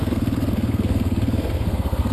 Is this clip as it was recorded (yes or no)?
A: no